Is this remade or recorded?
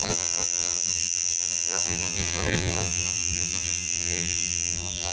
remade